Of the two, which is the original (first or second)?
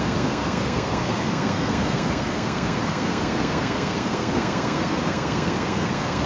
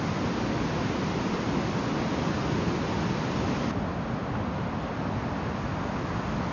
second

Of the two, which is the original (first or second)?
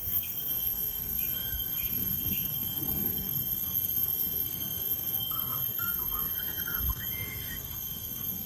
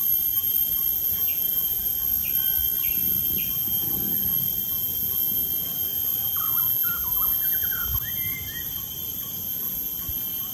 second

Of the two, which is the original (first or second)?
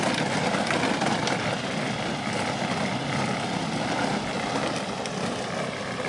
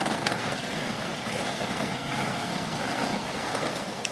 first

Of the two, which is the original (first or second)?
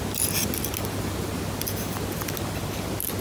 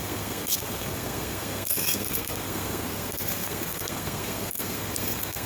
first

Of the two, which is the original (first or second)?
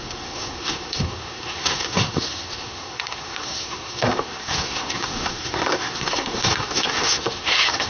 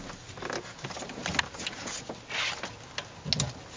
second